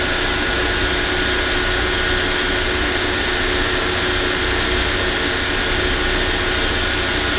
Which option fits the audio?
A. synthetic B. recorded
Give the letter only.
B